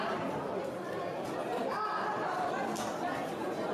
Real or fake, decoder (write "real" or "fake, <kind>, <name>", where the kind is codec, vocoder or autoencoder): real